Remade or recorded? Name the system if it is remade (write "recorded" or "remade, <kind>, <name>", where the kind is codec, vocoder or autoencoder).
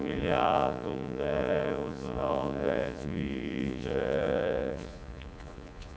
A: remade, vocoder, Vocos